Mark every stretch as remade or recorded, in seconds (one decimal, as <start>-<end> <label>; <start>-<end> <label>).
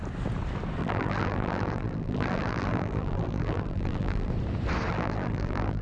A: 0.0-0.8 recorded; 0.8-4.3 remade; 4.3-4.9 recorded; 4.9-5.8 remade